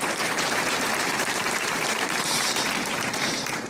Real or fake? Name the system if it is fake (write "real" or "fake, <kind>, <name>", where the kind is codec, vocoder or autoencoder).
fake, vocoder, BigVGAN v2